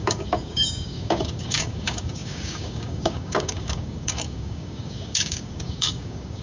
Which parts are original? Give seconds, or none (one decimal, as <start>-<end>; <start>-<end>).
none

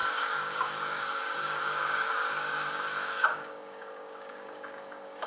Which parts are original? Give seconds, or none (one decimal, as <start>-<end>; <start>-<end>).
none

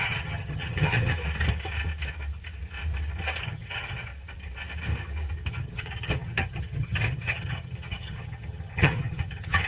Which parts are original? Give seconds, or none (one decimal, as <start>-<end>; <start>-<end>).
1.1-3.4; 4.1-5.5

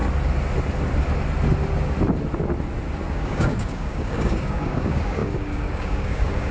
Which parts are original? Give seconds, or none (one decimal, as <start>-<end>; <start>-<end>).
0.0-3.1

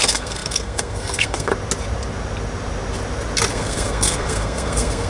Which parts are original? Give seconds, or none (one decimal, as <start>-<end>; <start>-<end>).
1.5-3.5

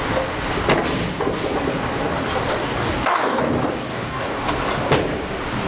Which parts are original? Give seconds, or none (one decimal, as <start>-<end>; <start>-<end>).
0.0-2.6; 3.5-3.9; 4.5-5.7

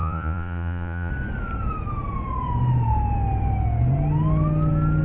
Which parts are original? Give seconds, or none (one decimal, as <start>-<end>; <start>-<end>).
1.1-5.0

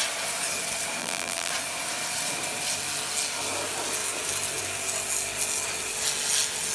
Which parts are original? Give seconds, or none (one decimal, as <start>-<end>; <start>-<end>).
0.0-1.0; 1.5-6.7